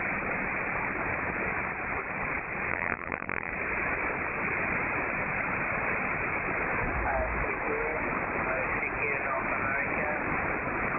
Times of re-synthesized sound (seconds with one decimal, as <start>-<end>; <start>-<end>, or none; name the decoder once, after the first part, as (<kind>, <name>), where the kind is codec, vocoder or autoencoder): 2.7-3.5 (vocoder, BigVGAN v2)